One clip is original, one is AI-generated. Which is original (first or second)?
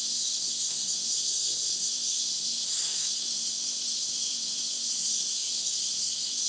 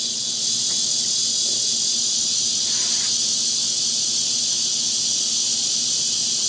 second